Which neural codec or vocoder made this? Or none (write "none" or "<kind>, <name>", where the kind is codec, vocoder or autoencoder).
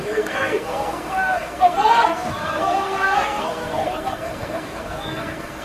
codec, SNAC